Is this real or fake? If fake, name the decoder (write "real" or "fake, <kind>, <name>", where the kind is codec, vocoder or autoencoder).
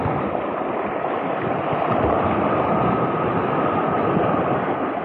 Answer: real